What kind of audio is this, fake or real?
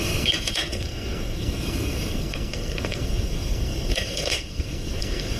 fake